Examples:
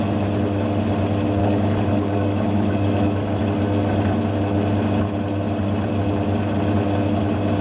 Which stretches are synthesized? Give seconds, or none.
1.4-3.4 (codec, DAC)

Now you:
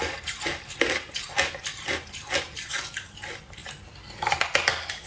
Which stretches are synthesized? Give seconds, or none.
3.6-4.4 (vocoder, BigVGAN v2)

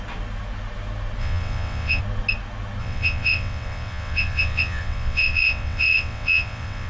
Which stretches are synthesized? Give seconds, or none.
1.2-2.0 (vocoder, WaveNeXt); 2.8-6.9

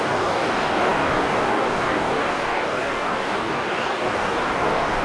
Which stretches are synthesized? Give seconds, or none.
0.0-5.0 (codec, DAC)